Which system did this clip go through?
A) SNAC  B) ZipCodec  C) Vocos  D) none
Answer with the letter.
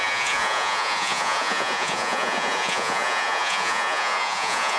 C